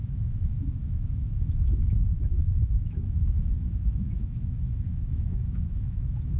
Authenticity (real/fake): fake